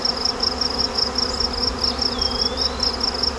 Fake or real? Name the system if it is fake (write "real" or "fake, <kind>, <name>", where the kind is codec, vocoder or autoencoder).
real